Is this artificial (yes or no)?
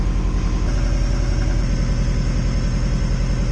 no